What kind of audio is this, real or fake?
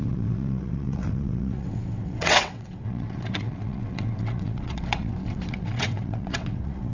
fake